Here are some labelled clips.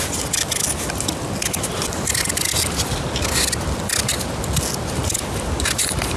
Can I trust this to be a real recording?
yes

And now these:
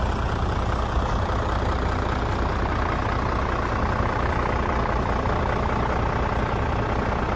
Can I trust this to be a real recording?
yes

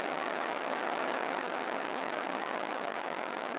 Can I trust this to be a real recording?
no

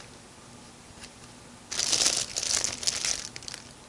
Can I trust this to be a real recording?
yes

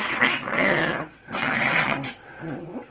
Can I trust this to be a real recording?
no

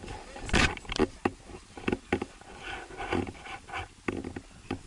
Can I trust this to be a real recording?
yes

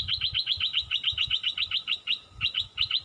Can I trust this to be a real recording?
no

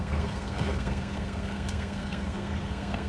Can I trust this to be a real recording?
no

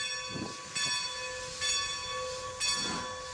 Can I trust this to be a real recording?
yes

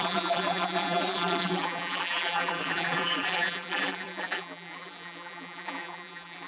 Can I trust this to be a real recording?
no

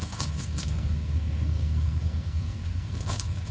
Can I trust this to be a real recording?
no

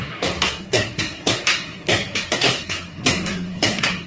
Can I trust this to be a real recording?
no